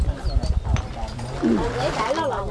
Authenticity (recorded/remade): recorded